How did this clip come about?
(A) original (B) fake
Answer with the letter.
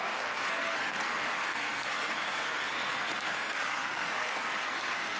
B